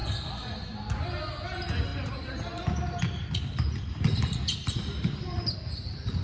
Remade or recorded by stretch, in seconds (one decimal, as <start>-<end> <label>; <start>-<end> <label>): 0.0-6.2 recorded